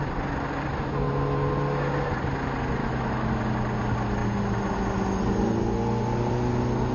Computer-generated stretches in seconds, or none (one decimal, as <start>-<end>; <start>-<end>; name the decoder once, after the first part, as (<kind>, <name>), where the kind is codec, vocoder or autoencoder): 2.8-3.4 (autoencoder, DAC-VAE)